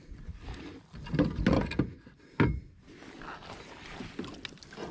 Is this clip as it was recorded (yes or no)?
yes